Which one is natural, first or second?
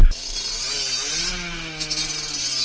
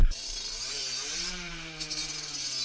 first